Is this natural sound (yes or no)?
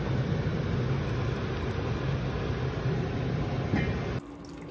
yes